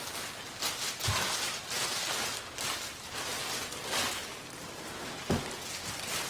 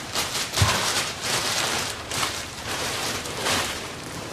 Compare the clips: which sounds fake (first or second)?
second